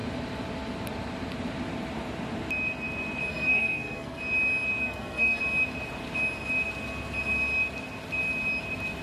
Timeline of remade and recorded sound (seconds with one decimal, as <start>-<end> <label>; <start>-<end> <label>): 0.0-3.3 recorded; 3.3-4.2 remade; 4.2-4.8 recorded; 4.8-5.4 remade; 5.4-9.0 recorded